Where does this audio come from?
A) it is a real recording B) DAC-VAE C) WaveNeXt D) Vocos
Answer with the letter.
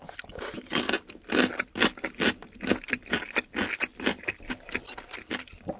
A